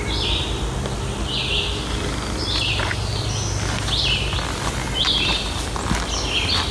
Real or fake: real